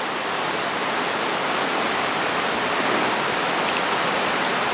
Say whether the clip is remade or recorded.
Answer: recorded